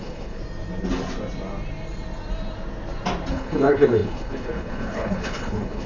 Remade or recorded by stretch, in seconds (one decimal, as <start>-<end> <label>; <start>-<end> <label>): 0.0-0.4 remade; 0.4-3.3 recorded; 3.3-5.9 remade